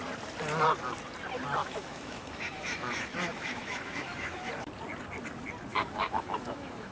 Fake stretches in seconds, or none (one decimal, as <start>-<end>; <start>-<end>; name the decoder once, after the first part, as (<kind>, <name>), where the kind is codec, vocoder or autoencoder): 1.6-4.5 (autoencoder, DAC-VAE); 5.7-6.9